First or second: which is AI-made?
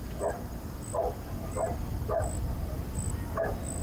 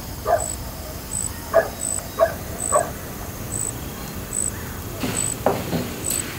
second